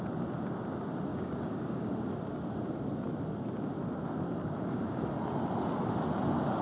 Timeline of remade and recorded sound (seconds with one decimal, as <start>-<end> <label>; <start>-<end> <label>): 0.0-1.1 recorded; 1.1-2.2 remade; 2.2-4.4 recorded; 4.4-5.1 remade; 5.1-6.6 recorded